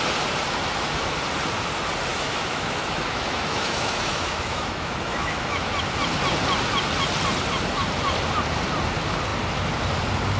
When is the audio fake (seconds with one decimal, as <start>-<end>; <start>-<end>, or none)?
2.1-5.7